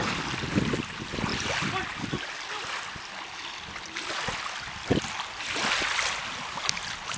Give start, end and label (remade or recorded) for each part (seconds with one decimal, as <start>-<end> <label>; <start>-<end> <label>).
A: 0.0-1.3 recorded; 1.3-5.0 remade; 5.0-7.2 recorded